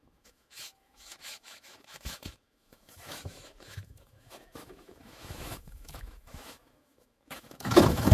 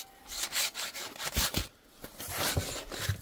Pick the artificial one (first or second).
first